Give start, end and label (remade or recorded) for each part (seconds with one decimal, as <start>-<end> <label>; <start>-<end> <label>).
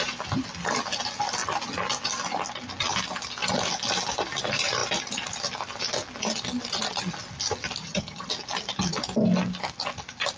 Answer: 0.0-7.8 recorded; 7.8-8.3 remade; 8.3-10.4 recorded